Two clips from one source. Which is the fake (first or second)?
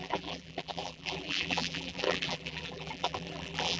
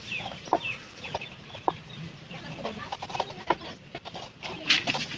first